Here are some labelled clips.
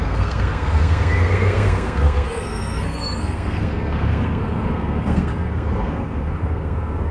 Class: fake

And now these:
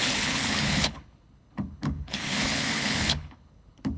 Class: fake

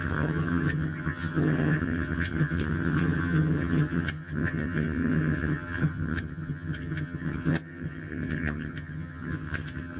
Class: fake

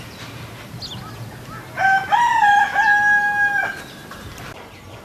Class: real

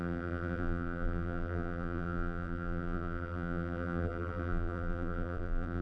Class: fake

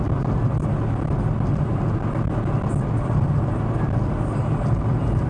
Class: real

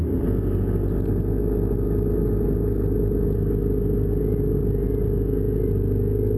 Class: real